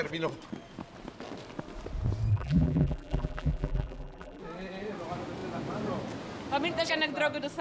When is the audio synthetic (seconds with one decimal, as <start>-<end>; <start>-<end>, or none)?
2.3-4.4